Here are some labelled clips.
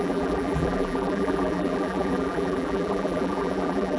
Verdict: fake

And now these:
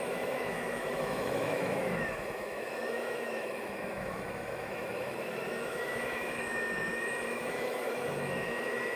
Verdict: fake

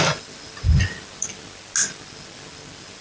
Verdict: real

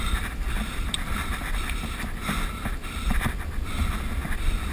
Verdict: real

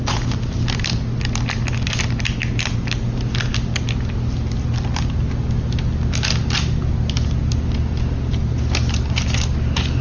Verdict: real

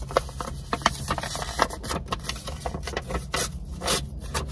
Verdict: real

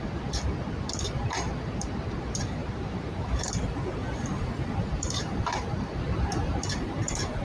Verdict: fake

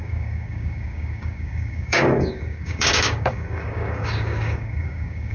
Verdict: fake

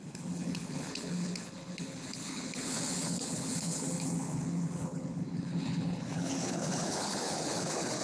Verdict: fake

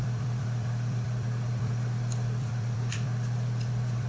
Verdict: fake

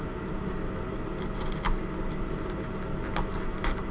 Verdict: real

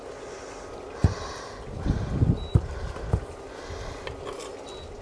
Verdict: real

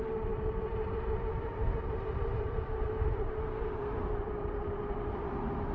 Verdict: fake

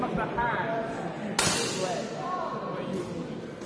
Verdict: real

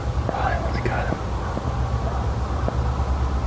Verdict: real